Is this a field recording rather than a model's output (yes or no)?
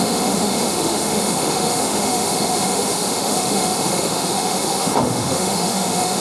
no